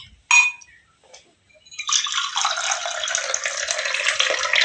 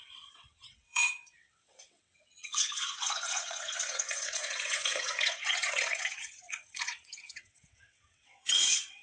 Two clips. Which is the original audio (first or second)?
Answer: first